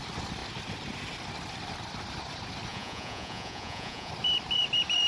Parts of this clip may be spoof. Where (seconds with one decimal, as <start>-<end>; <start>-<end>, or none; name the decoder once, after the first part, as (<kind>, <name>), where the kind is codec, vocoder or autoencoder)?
2.7-4.1 (vocoder, Vocos)